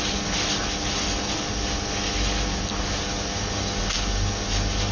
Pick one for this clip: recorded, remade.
recorded